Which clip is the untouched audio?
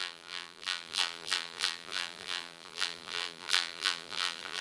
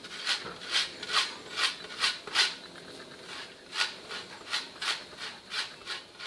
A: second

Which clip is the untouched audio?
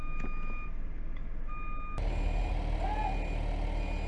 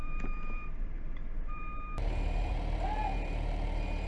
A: first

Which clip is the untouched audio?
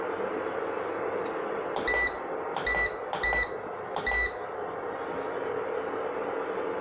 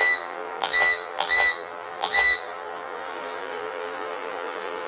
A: first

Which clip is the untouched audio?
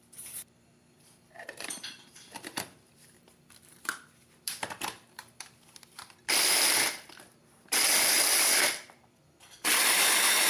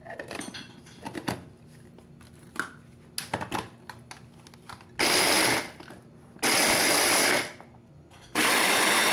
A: second